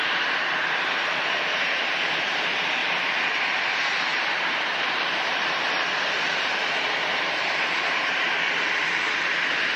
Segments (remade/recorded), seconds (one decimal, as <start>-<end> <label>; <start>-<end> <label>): 0.0-9.8 remade